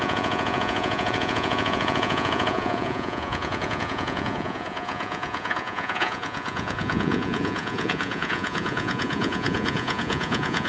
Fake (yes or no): yes